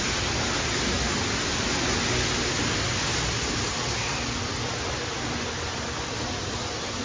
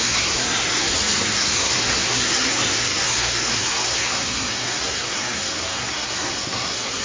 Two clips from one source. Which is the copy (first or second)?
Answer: second